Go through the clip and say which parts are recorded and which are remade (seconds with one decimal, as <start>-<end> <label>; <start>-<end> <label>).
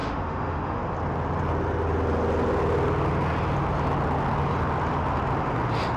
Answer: 0.0-0.8 remade; 0.8-6.0 recorded